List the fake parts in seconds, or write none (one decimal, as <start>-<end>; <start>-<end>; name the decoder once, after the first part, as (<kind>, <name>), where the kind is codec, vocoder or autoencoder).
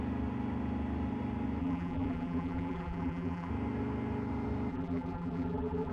1.6-3.5 (vocoder, BigVGAN v2); 4.7-5.9